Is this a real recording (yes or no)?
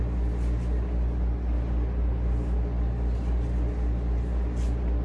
yes